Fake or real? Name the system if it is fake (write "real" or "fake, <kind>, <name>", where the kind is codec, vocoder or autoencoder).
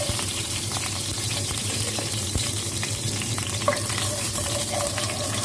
fake, vocoder, BigVGAN v2